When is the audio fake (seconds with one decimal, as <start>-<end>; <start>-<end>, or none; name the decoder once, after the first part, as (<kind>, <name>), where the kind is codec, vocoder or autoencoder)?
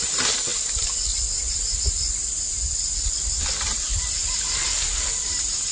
none